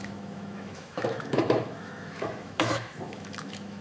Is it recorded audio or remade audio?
remade